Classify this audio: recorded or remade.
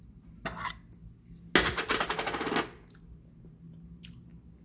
recorded